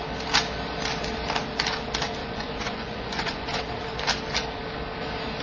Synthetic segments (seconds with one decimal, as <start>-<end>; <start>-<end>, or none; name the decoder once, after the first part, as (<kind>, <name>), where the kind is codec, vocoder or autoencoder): 2.2-3.6 (vocoder, Vocos)